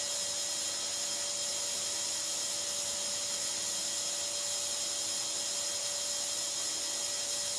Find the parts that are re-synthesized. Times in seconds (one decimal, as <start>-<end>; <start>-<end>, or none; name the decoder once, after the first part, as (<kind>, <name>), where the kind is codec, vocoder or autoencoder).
none